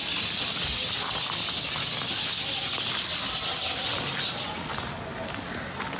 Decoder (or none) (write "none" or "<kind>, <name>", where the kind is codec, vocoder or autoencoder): none